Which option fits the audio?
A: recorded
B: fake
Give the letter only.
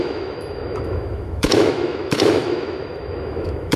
B